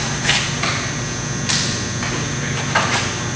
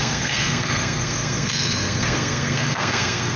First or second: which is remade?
second